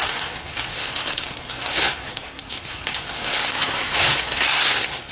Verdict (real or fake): fake